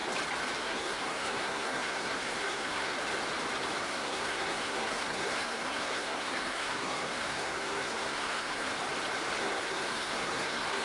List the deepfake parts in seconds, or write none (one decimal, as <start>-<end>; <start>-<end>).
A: 0.6-2.9; 3.8-8.7; 9.4-10.8